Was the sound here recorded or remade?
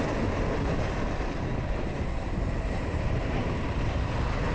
recorded